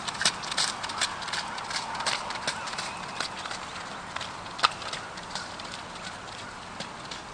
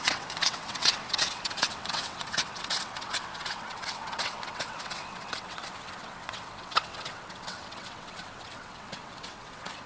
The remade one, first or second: second